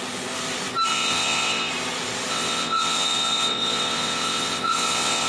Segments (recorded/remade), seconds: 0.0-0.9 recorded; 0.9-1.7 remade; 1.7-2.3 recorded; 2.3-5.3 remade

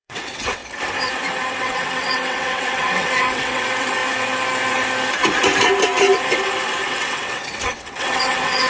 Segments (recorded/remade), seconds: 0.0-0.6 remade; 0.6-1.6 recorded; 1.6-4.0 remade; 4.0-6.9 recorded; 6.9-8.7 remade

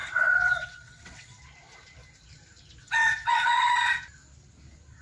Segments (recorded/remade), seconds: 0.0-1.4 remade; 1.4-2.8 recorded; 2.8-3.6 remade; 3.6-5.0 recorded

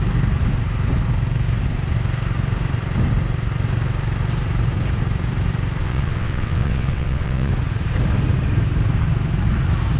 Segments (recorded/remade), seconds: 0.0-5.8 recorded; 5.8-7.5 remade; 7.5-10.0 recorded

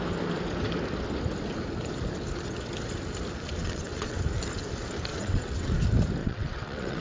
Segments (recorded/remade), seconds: 0.0-3.6 recorded; 3.6-4.2 remade; 4.2-5.1 recorded; 5.1-5.7 remade; 5.7-6.2 recorded; 6.2-7.0 remade